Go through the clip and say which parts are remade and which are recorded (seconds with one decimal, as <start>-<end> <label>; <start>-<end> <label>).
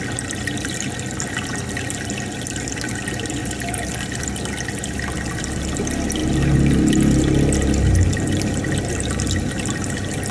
0.0-10.3 recorded